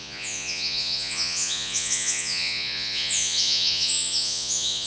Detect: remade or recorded remade